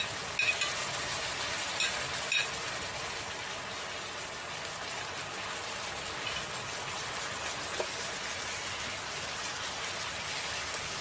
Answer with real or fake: real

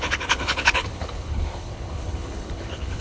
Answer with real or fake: fake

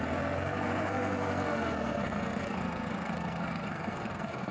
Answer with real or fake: fake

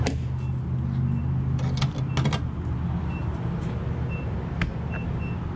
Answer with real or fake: real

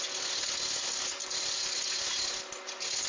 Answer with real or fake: real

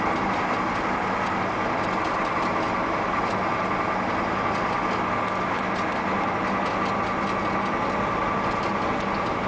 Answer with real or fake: real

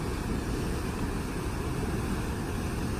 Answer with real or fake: real